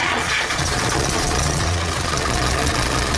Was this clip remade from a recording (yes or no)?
yes